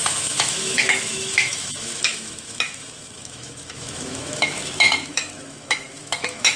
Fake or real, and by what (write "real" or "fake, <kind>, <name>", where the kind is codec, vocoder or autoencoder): fake, autoencoder, DAC-VAE